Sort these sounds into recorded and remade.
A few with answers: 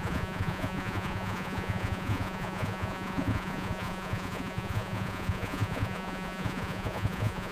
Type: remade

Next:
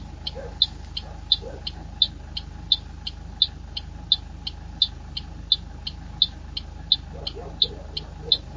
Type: recorded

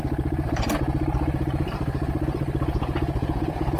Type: remade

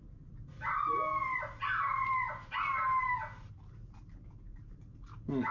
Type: recorded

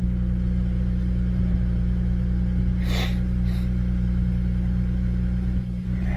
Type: recorded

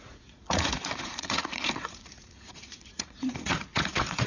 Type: remade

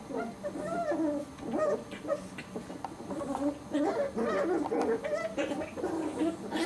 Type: recorded